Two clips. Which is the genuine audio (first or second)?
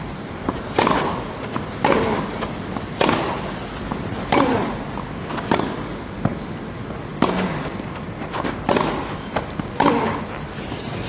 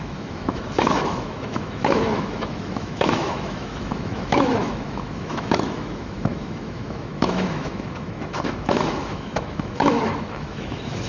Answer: first